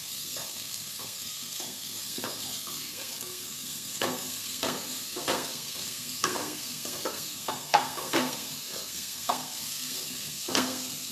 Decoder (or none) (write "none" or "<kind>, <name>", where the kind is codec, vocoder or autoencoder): codec, SNAC